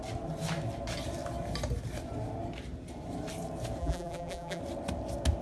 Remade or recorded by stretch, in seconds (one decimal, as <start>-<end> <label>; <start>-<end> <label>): 0.0-3.8 recorded; 3.8-4.6 remade; 4.6-5.4 recorded